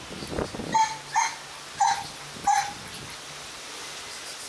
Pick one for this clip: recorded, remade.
recorded